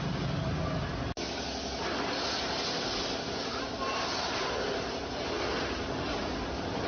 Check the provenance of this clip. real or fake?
real